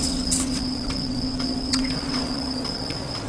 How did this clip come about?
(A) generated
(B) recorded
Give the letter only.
A